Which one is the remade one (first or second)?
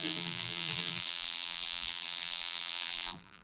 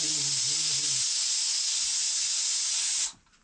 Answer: first